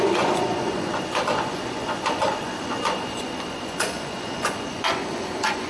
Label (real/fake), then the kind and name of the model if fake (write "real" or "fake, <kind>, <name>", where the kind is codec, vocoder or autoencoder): fake, vocoder, Vocos